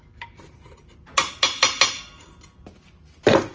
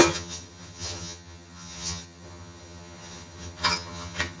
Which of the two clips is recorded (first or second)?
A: first